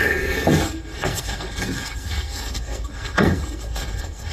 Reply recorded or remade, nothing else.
remade